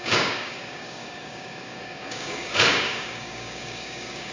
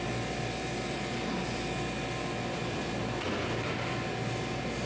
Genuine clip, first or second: second